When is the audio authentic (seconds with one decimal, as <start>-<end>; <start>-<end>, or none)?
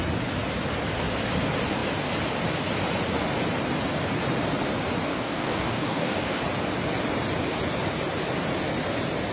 0.0-5.1; 6.4-9.3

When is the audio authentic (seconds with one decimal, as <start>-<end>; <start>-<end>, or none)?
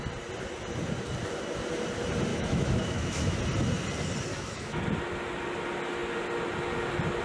0.0-2.3; 3.4-4.3; 4.8-7.2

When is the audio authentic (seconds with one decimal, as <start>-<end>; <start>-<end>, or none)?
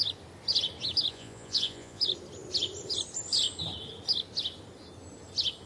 0.0-1.1; 2.0-5.7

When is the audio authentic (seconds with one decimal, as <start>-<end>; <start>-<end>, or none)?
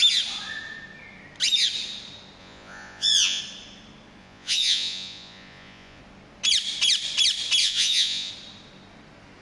0.0-2.4; 3.4-4.2; 6.0-7.6; 8.3-9.4